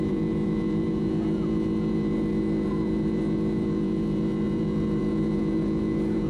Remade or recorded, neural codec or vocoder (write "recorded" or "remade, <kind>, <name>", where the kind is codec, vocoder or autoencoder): remade, vocoder, Vocos